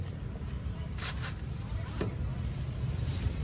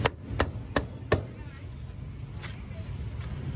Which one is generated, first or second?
first